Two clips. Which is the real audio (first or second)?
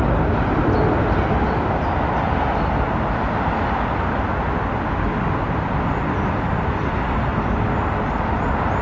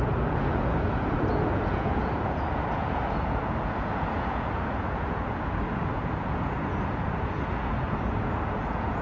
first